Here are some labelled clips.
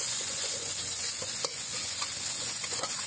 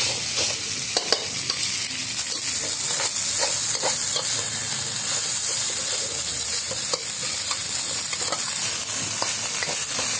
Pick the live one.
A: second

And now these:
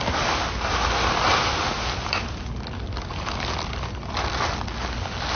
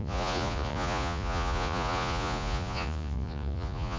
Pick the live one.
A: first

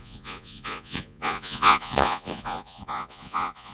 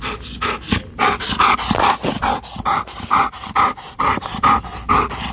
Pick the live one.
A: second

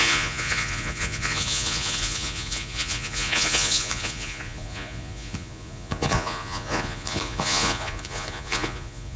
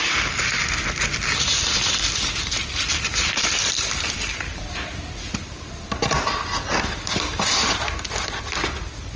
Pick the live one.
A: second